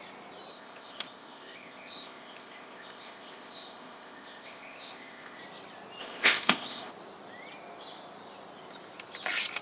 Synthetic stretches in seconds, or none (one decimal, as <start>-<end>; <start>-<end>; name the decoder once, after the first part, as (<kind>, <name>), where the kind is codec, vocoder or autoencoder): 0.5-5.4 (codec, ZipCodec); 6.0-6.9